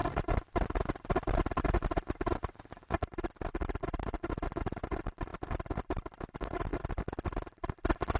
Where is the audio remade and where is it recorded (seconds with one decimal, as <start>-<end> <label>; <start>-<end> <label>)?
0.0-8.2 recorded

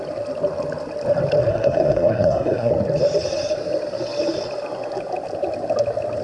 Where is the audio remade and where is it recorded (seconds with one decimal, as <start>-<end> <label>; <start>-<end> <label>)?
0.0-1.5 recorded; 1.5-2.7 remade; 2.7-6.2 recorded

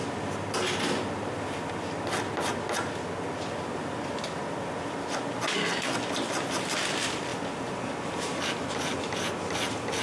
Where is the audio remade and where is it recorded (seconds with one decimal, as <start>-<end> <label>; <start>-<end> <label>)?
0.0-10.0 recorded

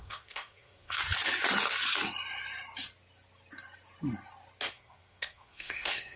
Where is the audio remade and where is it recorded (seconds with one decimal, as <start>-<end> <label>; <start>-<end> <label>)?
0.0-1.0 remade; 1.0-4.7 recorded; 4.7-6.2 remade

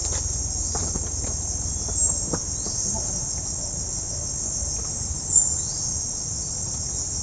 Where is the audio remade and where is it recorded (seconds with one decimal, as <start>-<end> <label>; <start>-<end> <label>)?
0.0-7.2 recorded

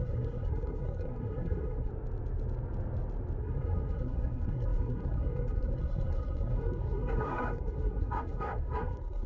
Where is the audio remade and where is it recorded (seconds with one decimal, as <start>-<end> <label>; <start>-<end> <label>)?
0.0-1.9 remade; 1.9-3.4 recorded; 3.4-9.3 remade

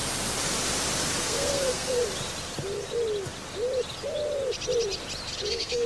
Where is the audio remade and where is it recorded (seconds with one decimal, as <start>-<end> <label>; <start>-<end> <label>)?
0.0-1.2 recorded; 1.2-2.0 remade; 2.0-5.5 recorded; 5.5-5.9 remade

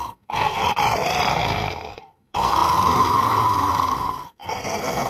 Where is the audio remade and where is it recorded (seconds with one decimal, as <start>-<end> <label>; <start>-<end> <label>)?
0.0-0.6 remade; 0.6-1.3 recorded; 1.3-5.1 remade